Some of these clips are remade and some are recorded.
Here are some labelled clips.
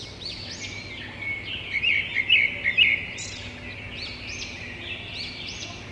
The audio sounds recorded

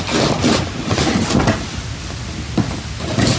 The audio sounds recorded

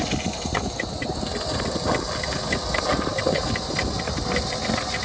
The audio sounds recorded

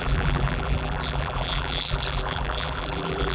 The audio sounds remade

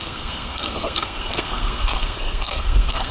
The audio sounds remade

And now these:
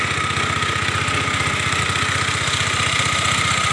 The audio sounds recorded